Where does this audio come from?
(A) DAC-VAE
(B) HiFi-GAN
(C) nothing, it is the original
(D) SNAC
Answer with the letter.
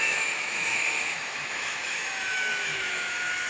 A